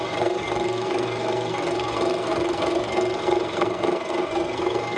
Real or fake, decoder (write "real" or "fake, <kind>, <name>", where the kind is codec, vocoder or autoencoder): fake, codec, SNAC